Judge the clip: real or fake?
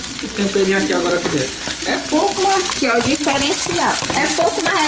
fake